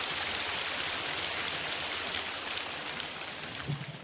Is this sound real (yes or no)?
yes